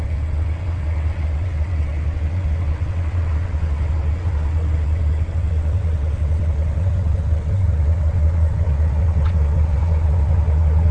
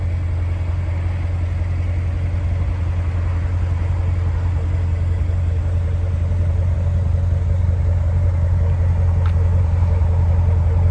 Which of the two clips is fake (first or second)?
first